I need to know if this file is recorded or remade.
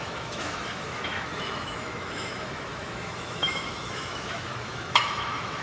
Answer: remade